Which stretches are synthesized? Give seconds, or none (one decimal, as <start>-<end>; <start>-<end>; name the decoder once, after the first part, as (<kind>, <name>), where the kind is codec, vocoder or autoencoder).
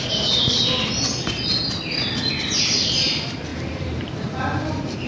0.0-0.6 (vocoder, BigVGAN v2); 2.7-5.1